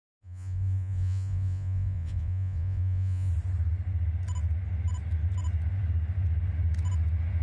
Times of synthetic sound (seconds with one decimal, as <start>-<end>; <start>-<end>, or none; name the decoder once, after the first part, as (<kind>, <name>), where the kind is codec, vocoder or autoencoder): 0.0-3.3 (vocoder, Vocos)